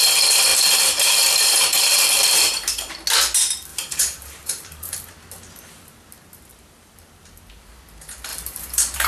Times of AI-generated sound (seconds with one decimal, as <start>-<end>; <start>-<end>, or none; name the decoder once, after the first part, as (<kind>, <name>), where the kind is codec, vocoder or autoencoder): 0.5-2.9 (vocoder, BigVGAN v2); 3.7-5.0; 8.3-9.1